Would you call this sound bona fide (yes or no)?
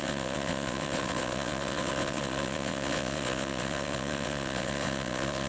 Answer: no